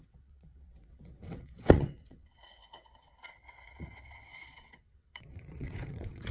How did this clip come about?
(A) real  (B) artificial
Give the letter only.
B